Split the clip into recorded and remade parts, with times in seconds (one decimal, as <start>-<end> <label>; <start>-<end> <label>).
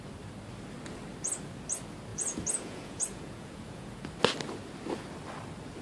0.0-2.1 recorded; 2.1-4.0 remade; 4.0-5.8 recorded